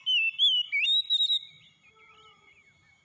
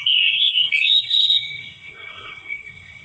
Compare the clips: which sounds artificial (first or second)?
second